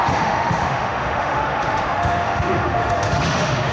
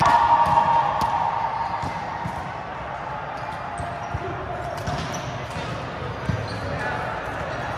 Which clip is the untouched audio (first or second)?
second